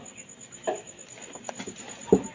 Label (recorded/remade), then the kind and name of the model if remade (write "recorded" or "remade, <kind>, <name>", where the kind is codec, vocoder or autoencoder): recorded